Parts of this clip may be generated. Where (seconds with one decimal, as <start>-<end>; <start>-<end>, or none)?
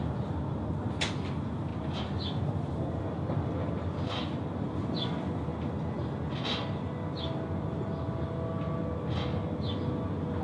none